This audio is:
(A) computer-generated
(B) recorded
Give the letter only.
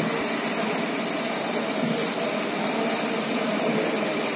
A